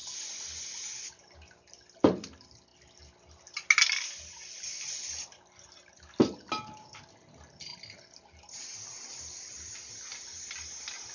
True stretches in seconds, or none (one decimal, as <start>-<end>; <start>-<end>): 0.0-11.1